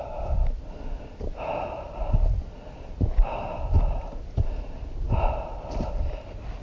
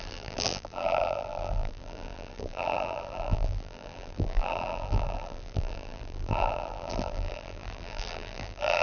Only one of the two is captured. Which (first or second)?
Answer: first